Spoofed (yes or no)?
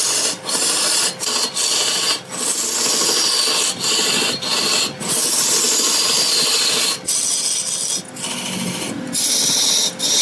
no